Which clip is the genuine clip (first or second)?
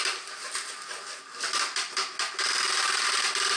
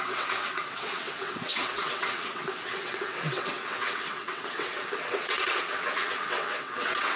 first